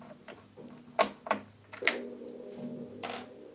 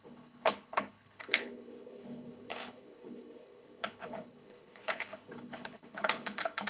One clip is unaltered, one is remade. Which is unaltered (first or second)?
first